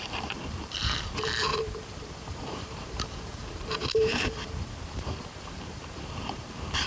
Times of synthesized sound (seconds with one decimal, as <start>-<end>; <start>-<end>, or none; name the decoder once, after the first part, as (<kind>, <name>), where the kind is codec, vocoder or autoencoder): 0.0-6.9 (vocoder, BigVGAN v2)

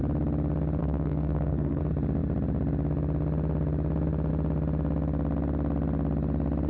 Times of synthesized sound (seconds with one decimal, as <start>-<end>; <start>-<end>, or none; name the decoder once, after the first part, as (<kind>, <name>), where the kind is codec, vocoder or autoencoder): 0.8-1.8 (codec, SNAC)